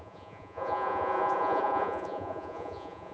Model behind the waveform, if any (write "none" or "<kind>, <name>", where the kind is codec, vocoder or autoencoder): vocoder, Vocos